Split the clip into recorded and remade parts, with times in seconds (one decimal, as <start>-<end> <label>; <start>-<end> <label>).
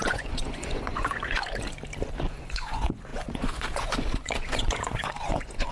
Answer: 0.0-1.4 remade; 1.4-2.3 recorded; 2.3-5.7 remade